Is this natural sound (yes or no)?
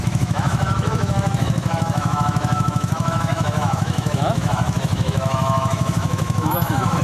no